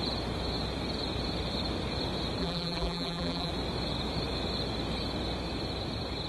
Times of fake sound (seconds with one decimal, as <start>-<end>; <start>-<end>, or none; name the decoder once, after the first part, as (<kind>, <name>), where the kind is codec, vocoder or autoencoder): 2.4-3.5 (vocoder, BigVGAN v2)